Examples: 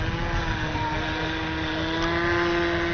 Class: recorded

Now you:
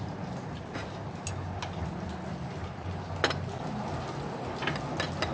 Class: recorded